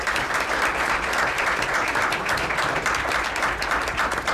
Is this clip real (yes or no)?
yes